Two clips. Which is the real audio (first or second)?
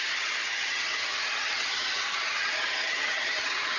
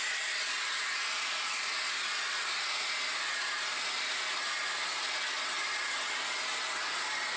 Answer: second